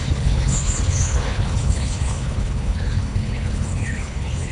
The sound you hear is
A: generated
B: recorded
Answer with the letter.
A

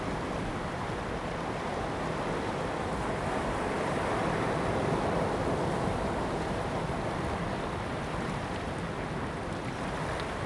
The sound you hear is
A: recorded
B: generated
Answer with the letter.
A